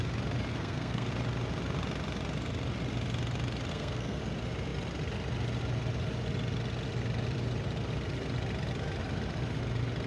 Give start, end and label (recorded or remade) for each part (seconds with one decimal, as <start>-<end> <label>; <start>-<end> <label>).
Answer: 0.0-0.5 recorded; 0.5-1.1 remade; 1.1-3.7 recorded; 3.7-4.2 remade; 4.2-10.1 recorded